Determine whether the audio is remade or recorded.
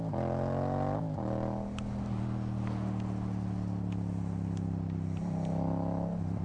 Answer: recorded